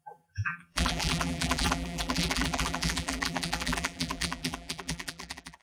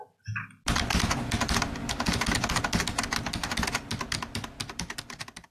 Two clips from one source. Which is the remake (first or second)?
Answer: first